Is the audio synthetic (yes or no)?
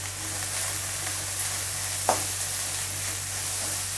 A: no